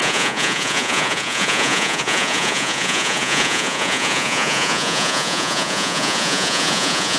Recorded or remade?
remade